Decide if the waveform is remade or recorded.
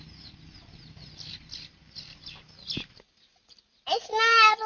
recorded